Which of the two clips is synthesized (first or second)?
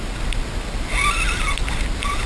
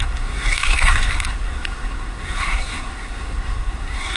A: second